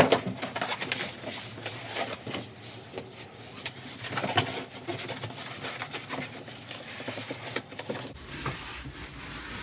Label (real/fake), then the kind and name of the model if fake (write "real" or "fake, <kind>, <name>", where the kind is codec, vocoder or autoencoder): real